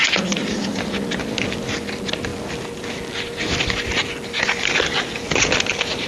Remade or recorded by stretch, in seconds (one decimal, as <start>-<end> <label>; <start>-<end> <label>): 0.0-6.1 recorded